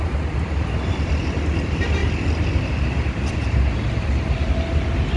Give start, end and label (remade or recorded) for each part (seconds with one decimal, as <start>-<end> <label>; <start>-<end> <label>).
0.0-5.2 recorded